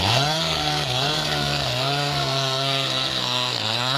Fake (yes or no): yes